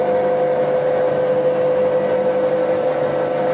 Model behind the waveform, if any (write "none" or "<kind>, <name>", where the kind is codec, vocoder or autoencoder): none